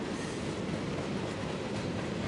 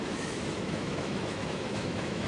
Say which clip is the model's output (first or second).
second